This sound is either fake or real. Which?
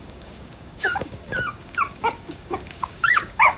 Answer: fake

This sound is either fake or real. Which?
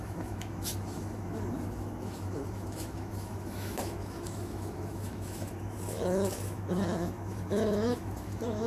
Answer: fake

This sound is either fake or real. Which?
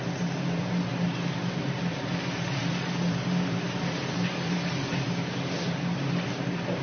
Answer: real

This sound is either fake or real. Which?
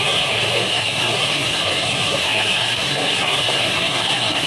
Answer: fake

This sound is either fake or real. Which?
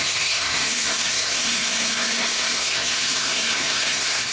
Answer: fake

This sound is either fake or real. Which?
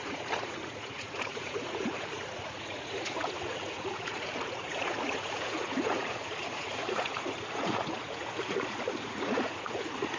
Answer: fake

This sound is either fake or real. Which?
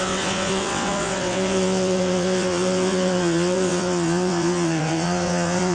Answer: fake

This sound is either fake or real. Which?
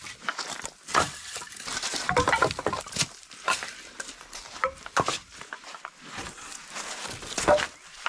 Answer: real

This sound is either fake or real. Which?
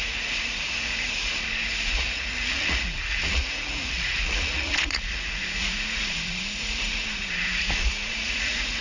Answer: fake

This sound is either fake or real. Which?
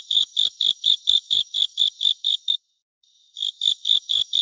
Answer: fake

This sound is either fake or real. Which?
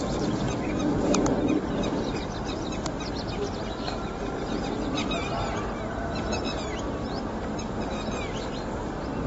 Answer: real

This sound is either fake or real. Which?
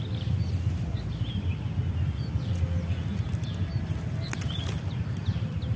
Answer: real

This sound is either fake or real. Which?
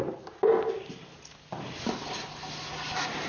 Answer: real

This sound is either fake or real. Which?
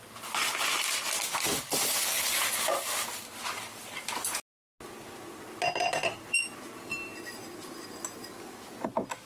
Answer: real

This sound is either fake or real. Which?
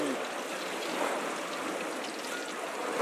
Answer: real